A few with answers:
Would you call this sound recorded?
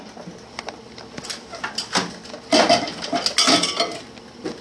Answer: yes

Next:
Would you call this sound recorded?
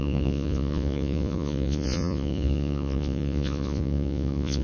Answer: no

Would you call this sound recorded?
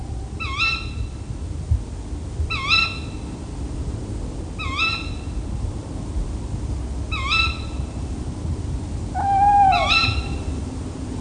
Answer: yes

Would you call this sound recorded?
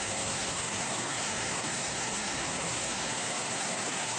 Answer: no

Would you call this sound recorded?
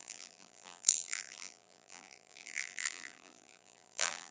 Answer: no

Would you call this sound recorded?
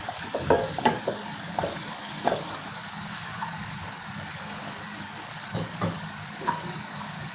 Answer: no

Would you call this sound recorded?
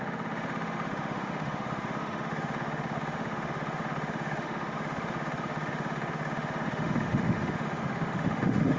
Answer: no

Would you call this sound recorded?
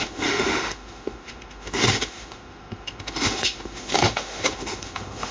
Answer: no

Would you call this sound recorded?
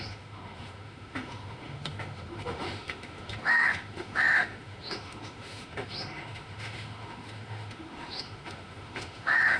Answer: no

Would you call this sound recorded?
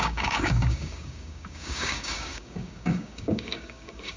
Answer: no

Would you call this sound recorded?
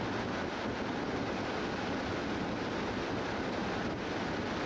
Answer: yes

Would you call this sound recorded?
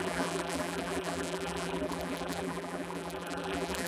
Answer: no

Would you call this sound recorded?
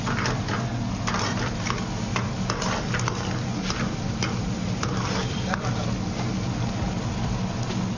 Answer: yes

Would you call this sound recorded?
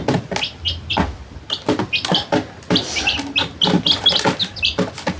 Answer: yes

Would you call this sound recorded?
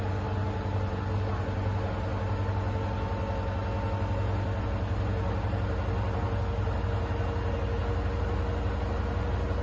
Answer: yes